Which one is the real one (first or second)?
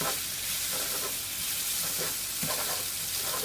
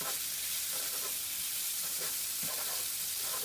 first